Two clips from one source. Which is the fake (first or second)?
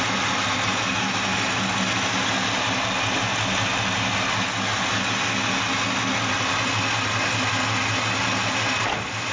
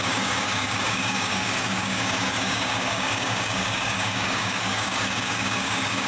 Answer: second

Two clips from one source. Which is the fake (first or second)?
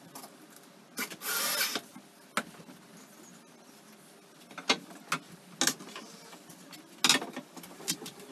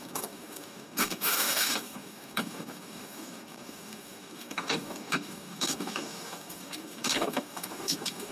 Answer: second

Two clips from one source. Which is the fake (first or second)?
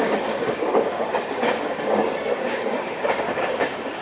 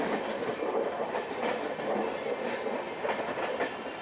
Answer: first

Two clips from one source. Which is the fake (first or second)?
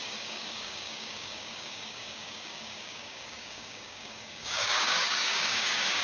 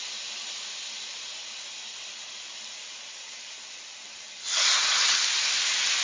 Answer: first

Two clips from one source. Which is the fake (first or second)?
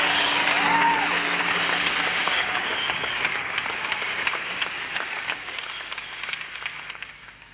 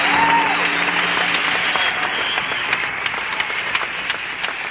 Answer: first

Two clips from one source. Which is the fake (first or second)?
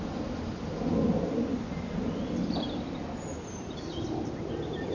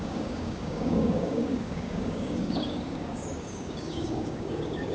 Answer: second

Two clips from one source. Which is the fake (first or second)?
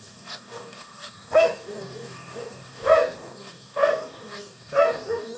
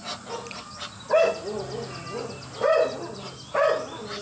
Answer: first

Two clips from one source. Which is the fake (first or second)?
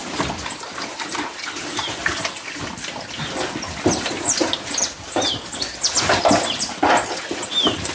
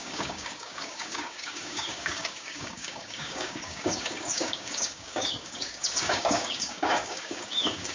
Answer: second